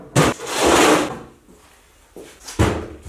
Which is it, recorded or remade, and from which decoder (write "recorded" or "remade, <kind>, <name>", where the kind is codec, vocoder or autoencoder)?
recorded